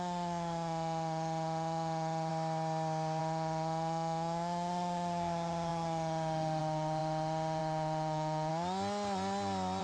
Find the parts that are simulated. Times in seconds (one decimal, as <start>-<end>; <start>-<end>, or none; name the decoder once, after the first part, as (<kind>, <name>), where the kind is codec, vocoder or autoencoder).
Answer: 0.0-2.3 (autoencoder, DAC-VAE); 3.2-8.5